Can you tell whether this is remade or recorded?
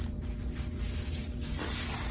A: recorded